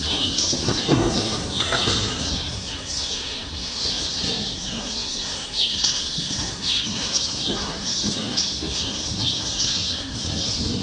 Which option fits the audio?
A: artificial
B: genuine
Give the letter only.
A